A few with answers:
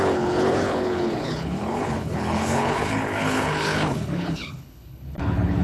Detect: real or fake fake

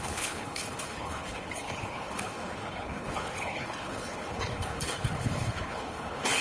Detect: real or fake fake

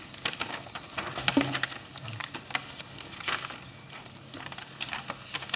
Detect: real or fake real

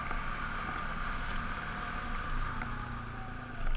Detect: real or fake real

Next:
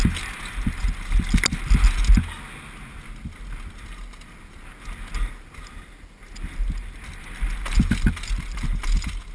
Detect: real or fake real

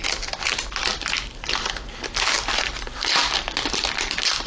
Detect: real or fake real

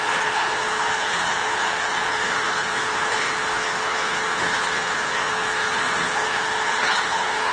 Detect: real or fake fake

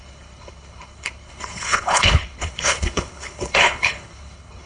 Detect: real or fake fake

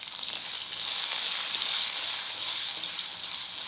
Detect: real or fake real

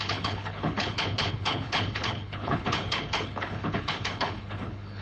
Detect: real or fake fake